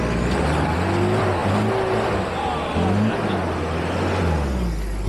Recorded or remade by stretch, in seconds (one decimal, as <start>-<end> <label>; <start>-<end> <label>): 0.0-5.1 recorded